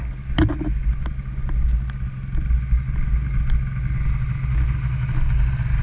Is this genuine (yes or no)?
yes